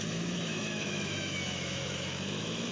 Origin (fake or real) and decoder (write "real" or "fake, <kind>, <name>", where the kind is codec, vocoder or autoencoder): fake, autoencoder, DAC-VAE